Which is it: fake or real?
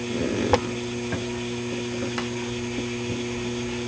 real